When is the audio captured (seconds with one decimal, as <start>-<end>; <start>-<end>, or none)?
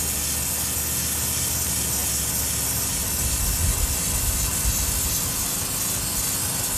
0.0-6.8